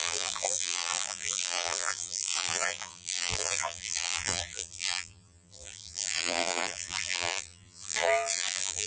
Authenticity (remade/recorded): remade